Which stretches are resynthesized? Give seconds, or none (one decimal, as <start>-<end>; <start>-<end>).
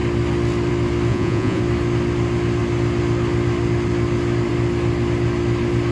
1.1-1.6